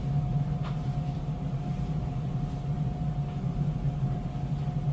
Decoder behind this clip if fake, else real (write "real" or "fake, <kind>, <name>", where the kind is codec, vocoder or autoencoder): real